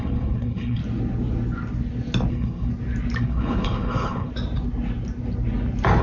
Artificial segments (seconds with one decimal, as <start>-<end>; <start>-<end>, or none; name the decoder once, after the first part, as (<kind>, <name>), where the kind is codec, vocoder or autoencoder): 0.0-0.8 (codec, HILCodec); 2.3-2.7; 3.2-4.3